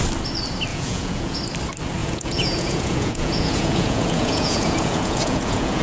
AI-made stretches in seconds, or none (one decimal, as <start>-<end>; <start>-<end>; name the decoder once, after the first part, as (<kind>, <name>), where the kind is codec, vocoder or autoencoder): 0.7-1.4 (vocoder, Vocos); 2.0-5.8